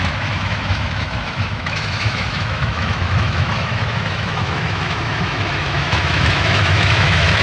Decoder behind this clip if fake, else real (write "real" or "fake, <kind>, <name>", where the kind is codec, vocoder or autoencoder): fake, autoencoder, DAC-VAE